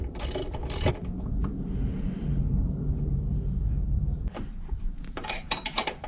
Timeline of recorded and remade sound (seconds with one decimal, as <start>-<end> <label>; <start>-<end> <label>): 0.0-2.3 recorded; 2.3-6.1 remade